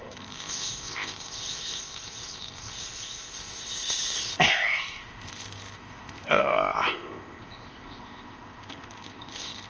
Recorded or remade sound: remade